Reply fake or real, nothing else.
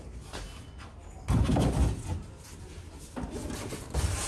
real